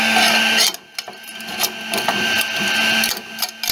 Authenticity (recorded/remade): recorded